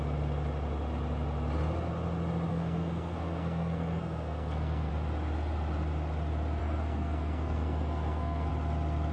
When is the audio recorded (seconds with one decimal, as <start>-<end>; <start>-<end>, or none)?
0.0-2.5; 4.9-6.6; 8.5-9.1